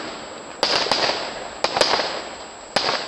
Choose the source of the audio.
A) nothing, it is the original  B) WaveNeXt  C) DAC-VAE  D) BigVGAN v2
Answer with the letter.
A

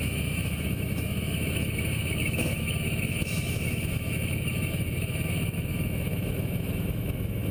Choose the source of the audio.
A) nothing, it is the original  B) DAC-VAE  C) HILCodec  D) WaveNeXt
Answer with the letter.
B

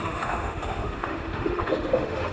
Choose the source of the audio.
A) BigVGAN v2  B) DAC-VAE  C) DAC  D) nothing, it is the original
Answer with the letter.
B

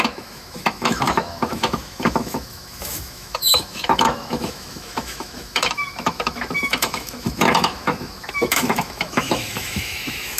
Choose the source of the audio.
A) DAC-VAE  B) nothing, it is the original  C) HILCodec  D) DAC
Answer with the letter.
A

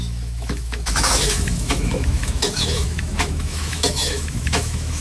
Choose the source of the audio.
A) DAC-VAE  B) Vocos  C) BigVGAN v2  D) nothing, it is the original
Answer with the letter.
A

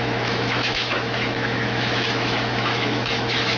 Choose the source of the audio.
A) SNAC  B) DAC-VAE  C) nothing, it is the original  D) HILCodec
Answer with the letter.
B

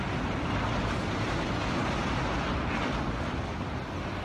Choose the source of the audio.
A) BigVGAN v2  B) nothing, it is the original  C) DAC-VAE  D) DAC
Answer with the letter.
B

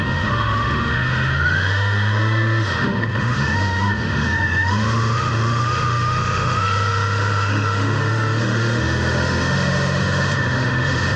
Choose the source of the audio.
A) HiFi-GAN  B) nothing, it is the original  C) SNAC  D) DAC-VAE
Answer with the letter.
D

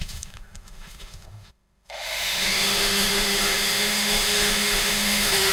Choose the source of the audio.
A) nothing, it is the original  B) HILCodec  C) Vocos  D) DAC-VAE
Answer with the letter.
D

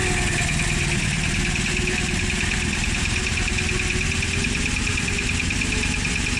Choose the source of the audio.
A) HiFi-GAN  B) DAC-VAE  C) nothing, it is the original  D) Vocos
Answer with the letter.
C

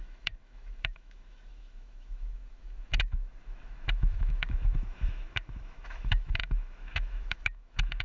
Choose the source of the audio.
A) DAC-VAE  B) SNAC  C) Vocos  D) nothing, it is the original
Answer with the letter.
A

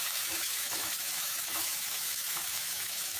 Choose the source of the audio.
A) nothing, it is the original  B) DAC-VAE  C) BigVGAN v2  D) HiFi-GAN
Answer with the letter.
B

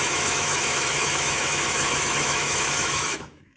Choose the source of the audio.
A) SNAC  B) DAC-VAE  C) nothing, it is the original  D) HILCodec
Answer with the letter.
B